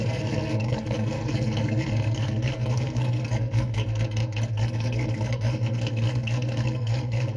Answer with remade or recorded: remade